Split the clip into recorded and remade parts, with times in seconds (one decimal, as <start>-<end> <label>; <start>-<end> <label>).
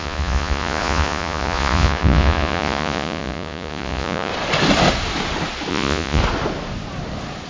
0.0-4.3 remade; 4.3-5.7 recorded; 5.7-6.2 remade; 6.2-7.5 recorded